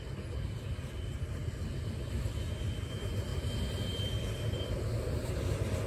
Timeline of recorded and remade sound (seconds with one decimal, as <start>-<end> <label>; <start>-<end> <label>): 0.0-3.3 recorded; 3.3-5.3 remade; 5.3-5.9 recorded